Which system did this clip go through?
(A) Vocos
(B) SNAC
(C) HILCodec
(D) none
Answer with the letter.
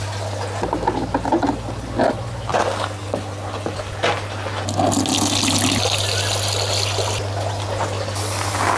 D